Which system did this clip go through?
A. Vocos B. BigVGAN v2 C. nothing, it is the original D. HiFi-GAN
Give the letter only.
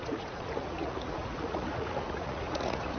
A